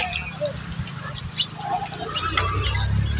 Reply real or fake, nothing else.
real